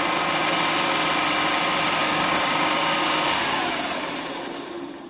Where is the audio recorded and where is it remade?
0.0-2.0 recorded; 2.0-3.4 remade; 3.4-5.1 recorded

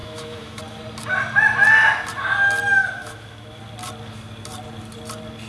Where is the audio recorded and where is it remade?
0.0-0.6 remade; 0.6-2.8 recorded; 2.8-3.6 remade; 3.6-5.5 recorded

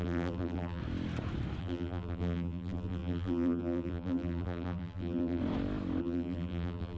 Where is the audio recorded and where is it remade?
0.0-0.8 remade; 0.8-1.6 recorded; 1.6-5.4 remade; 5.4-6.0 recorded; 6.0-7.0 remade

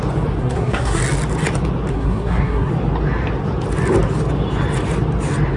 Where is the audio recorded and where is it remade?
0.0-0.4 recorded; 0.4-1.0 remade; 1.0-1.9 recorded; 1.9-2.7 remade; 2.7-5.6 recorded